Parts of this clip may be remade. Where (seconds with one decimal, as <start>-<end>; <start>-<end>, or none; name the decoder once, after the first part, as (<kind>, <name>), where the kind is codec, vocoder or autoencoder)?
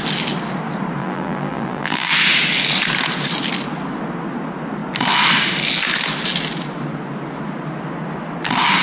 1.0-2.1 (vocoder, BigVGAN v2)